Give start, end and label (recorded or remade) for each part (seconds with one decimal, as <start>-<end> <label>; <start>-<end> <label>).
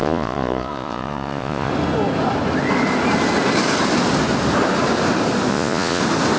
0.0-1.7 remade; 1.7-5.5 recorded; 5.5-6.0 remade; 6.0-6.4 recorded